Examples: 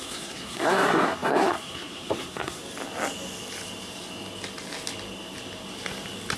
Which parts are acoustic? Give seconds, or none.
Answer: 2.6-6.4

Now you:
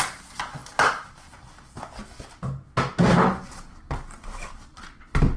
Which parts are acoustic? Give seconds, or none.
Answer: 0.0-5.4

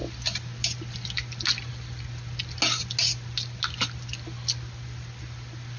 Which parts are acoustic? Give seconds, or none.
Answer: 0.0-5.8

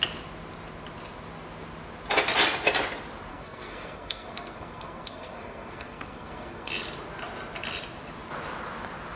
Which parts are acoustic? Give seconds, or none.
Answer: 0.0-3.3; 6.7-9.2

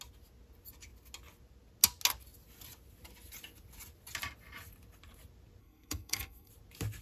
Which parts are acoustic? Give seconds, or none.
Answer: 0.0-5.6; 6.5-7.0

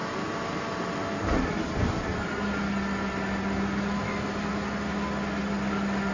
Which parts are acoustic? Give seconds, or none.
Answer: 0.0-6.1

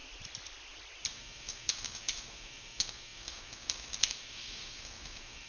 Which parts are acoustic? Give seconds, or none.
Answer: 0.0-1.1